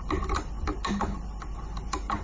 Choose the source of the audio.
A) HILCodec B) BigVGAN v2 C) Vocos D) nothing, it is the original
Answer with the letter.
D